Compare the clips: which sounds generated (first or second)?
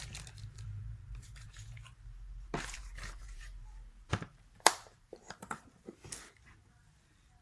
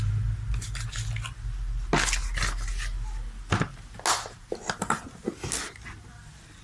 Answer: first